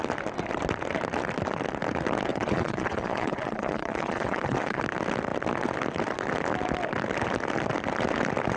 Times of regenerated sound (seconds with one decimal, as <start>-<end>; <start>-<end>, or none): 2.3-4.8